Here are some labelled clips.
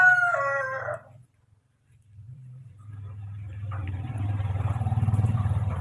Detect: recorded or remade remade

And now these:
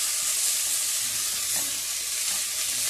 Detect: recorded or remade recorded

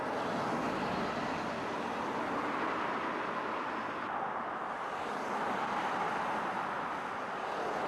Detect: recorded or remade recorded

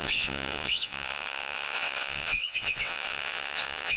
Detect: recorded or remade remade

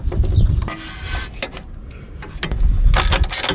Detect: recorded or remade recorded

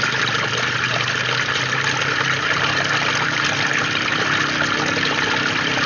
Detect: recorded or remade recorded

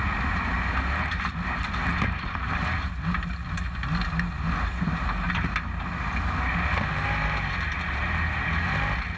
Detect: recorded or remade recorded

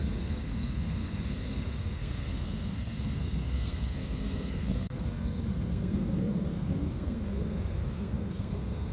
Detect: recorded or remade remade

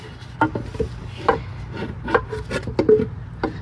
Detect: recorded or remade recorded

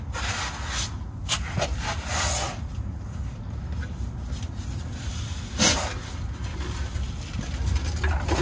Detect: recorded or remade recorded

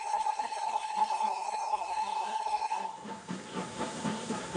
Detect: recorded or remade remade